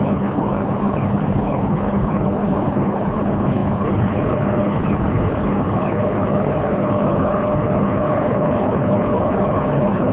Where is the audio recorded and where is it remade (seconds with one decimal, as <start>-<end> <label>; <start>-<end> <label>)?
0.0-10.1 remade